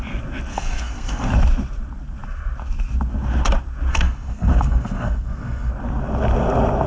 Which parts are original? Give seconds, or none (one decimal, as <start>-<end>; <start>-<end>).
0.0-0.5; 1.3-3.9; 5.7-6.9